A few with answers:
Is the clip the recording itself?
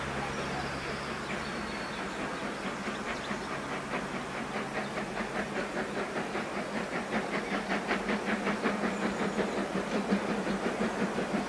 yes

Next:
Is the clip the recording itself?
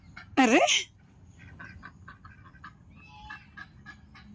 yes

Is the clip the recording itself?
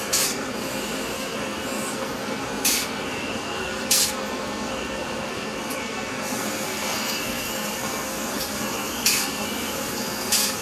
no